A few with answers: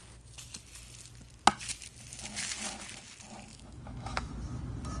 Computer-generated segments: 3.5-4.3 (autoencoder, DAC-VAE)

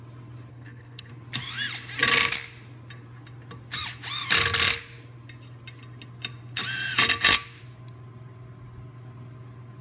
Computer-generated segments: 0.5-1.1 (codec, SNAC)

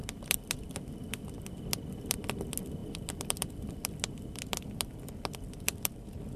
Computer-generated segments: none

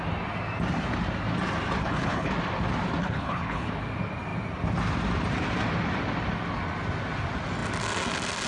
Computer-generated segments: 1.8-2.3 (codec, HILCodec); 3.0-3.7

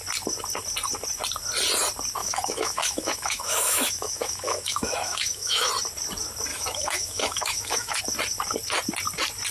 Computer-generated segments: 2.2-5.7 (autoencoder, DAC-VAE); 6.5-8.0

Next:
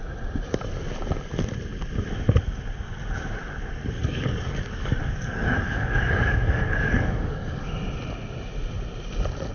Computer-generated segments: 4.0-7.7 (codec, DAC)

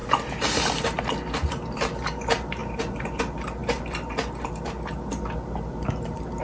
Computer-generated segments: none

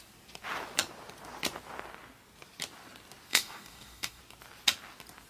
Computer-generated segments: 3.3-4.2 (codec, DAC)